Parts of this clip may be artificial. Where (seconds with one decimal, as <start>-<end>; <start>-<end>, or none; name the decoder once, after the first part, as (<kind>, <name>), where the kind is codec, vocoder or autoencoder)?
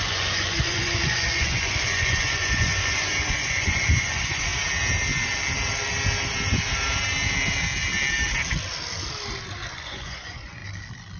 0.0-4.5 (vocoder, Vocos); 9.7-10.6